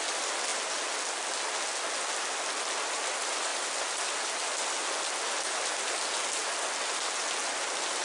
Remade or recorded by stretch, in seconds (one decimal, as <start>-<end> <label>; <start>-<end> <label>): 0.0-8.0 recorded